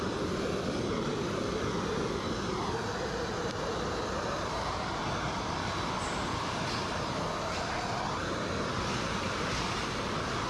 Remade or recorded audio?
recorded